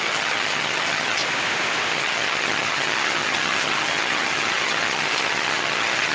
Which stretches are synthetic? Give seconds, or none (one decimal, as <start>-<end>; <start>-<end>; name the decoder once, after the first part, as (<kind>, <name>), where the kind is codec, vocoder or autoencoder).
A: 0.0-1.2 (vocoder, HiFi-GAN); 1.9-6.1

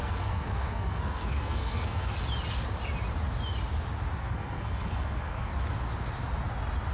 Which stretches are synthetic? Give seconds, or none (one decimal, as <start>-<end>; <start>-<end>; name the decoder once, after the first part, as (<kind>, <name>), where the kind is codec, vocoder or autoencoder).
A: 0.0-2.1 (codec, SNAC); 4.2-5.5

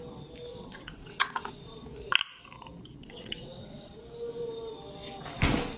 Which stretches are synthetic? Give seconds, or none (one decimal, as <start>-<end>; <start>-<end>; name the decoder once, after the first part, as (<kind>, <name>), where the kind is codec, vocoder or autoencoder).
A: 0.5-1.6 (vocoder, WaveNeXt); 3.0-3.9

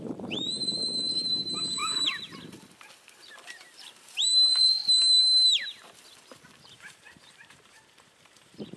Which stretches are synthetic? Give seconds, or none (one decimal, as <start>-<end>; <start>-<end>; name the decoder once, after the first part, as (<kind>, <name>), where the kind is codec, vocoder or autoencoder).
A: 0.0-1.8 (vocoder, BigVGAN v2); 3.3-4.8; 6.6-8.8

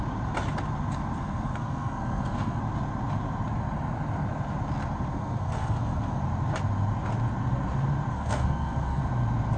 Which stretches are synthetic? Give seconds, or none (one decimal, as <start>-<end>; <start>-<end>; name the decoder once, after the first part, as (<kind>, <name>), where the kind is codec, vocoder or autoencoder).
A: 1.2-2.6 (codec, SNAC); 5.1-6.2; 8.1-9.0

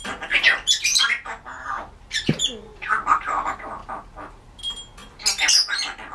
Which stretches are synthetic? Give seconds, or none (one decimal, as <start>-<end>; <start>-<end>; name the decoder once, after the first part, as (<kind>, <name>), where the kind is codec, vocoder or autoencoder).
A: none